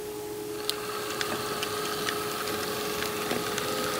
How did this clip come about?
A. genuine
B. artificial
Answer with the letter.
A